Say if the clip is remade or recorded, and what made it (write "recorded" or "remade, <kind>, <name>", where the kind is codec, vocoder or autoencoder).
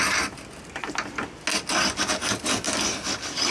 recorded